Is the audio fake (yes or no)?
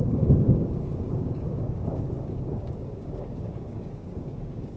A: yes